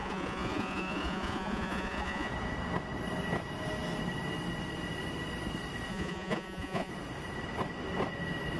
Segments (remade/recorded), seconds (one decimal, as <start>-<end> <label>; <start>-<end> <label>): 0.0-2.3 remade; 2.3-5.9 recorded; 5.9-6.9 remade; 6.9-8.6 recorded